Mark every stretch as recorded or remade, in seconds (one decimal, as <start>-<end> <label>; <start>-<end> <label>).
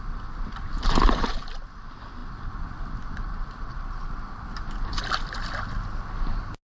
0.0-6.7 recorded